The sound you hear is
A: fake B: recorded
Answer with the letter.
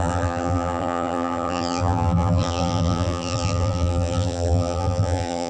A